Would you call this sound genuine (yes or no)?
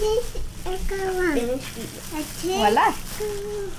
yes